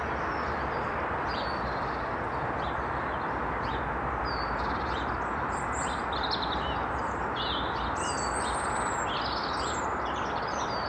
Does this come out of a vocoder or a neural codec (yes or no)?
no